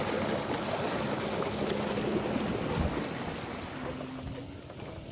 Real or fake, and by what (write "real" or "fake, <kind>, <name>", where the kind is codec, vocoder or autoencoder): real